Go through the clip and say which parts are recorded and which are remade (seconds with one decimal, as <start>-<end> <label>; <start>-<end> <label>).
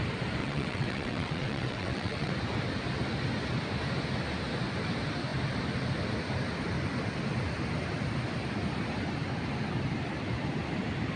0.0-0.4 recorded; 0.4-2.3 remade; 2.3-11.2 recorded